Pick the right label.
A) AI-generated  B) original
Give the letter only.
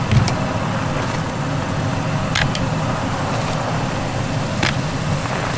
B